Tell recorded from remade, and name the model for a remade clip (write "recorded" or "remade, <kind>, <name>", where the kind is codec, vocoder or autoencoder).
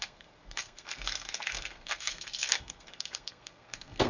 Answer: remade, codec, SNAC